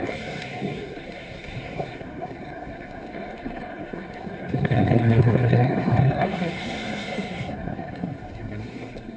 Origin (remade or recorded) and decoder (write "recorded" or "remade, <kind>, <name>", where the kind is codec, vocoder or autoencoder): remade, codec, SNAC